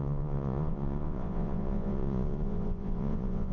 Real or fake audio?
fake